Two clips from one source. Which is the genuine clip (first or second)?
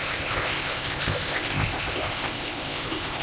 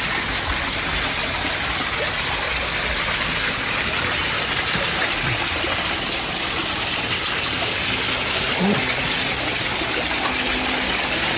second